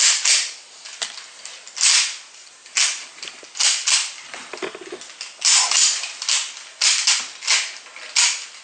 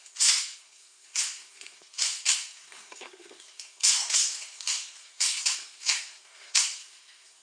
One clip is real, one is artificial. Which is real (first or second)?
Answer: first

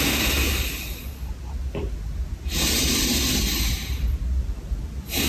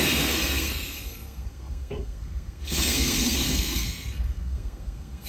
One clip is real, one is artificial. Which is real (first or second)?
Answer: first